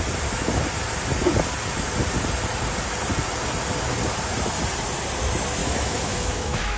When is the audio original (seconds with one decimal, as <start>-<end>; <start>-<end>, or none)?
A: 0.0-5.6